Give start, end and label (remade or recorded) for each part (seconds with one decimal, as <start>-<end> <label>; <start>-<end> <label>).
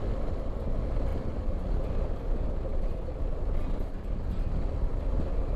0.0-5.6 recorded